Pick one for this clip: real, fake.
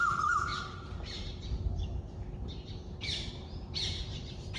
fake